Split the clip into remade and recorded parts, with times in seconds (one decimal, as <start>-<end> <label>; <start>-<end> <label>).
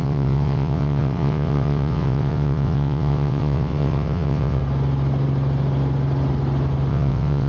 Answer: 0.0-4.6 remade; 4.6-6.9 recorded; 6.9-7.5 remade